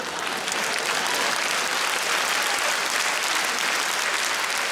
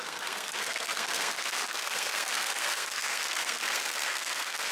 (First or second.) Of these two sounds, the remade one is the second